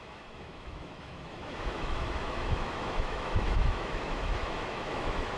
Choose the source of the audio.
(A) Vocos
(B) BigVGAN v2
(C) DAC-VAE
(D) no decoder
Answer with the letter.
C